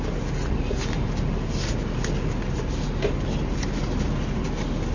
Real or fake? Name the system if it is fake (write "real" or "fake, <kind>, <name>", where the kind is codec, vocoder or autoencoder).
real